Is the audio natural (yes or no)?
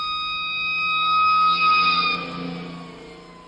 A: yes